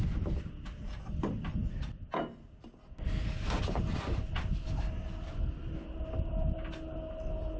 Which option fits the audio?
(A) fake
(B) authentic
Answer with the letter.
B